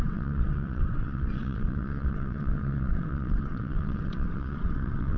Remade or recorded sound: remade